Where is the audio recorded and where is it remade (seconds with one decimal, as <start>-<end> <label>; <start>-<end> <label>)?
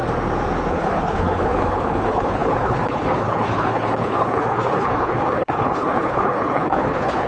0.0-0.7 recorded; 0.7-7.3 remade